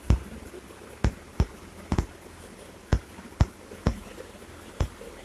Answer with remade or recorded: recorded